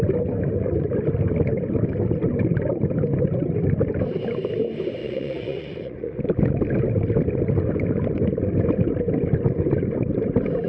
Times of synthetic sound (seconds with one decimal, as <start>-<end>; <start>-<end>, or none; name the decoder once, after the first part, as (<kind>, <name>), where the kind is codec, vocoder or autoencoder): 5.0-6.2 (vocoder, Vocos)